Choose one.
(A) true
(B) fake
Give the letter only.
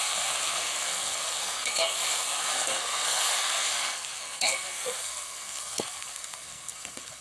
B